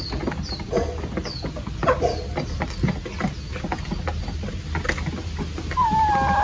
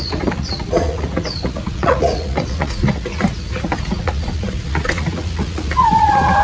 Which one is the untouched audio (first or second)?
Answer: first